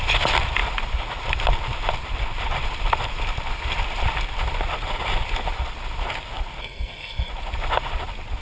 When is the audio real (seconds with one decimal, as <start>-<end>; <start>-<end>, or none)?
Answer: 0.0-6.6; 7.3-8.4